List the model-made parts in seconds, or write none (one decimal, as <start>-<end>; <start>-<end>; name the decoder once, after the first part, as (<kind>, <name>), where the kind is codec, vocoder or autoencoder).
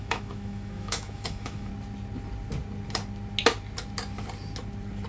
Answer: 0.0-1.7 (autoencoder, DAC-VAE)